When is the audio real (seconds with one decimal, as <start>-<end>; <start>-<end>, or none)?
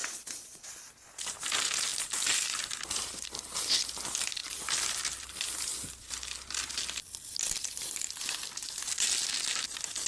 0.7-10.1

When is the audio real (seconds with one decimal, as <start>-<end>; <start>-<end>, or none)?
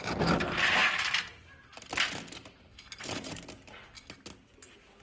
0.0-5.0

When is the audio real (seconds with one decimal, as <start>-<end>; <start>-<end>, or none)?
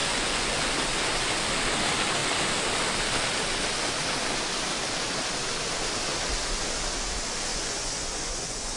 0.7-7.5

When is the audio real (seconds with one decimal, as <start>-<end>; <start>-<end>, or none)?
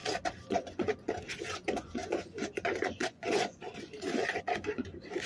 0.0-0.5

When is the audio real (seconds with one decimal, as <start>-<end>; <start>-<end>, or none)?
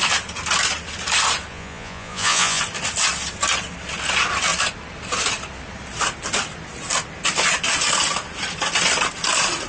0.0-1.5; 2.6-9.7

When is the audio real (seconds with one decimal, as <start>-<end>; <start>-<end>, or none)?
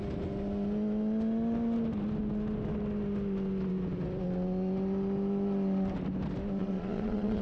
0.0-6.6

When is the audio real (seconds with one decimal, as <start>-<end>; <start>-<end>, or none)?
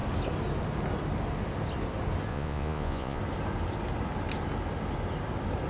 0.0-2.3; 3.2-5.7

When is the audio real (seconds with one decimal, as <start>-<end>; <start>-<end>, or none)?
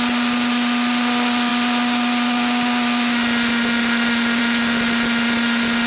0.0-5.9